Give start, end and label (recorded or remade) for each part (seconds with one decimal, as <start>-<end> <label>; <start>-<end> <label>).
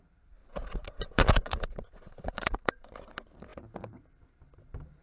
0.0-0.4 recorded; 0.4-2.9 remade; 2.9-5.0 recorded